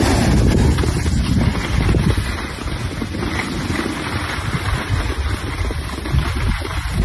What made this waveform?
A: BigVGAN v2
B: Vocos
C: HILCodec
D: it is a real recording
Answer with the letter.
D